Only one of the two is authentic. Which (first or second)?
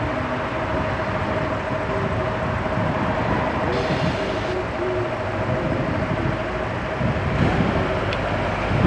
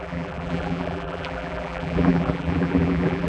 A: first